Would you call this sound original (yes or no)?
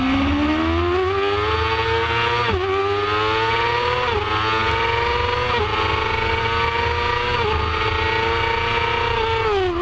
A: yes